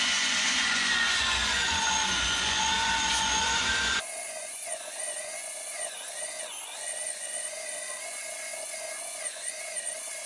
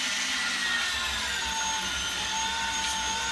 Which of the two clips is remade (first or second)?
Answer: first